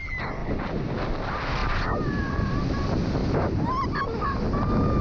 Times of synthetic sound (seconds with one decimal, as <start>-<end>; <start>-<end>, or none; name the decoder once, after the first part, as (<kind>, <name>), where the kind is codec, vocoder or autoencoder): 0.4-1.0 (vocoder, BigVGAN v2); 3.2-4.0